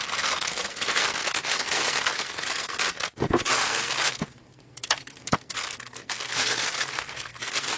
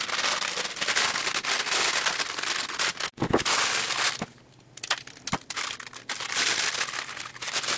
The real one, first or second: second